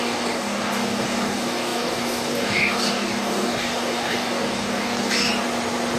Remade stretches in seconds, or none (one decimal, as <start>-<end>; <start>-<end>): 0.0-5.3